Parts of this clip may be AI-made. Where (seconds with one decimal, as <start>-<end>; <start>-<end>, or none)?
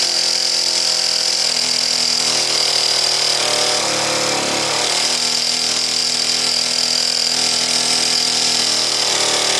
none